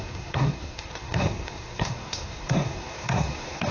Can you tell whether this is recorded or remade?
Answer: remade